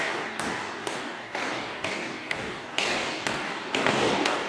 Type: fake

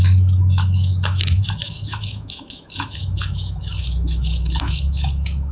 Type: fake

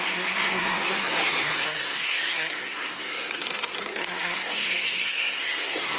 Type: fake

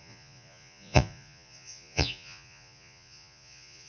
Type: fake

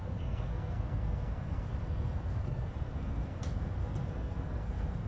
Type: fake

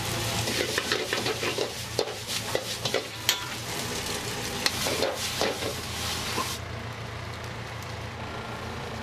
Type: fake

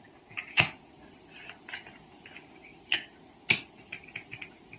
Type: real